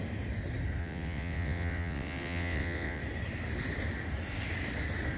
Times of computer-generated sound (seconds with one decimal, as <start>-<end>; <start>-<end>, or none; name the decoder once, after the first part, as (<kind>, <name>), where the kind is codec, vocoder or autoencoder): 0.8-3.0 (vocoder, WaveNeXt)